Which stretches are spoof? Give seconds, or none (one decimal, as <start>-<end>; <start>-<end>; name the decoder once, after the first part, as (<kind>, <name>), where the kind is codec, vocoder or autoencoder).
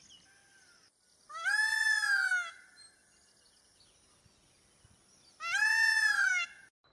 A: none